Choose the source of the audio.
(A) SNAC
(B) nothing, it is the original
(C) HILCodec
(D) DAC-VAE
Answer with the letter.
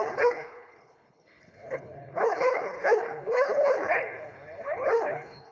C